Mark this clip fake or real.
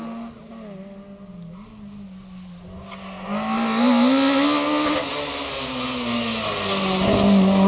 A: real